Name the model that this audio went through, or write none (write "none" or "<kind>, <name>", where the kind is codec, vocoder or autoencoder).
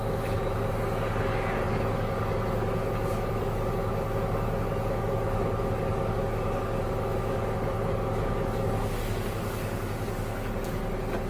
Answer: codec, DAC